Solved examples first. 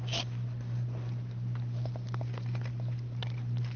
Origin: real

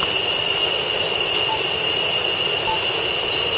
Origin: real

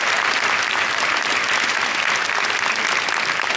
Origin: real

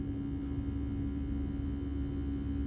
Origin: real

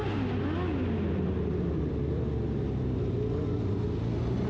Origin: real